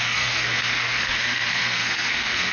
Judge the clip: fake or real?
fake